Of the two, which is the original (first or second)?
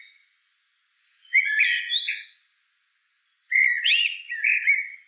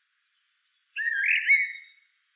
second